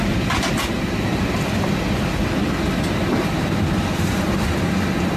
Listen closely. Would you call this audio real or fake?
real